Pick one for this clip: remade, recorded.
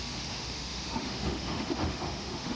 remade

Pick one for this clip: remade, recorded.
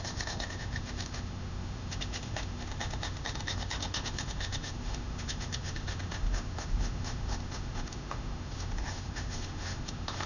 remade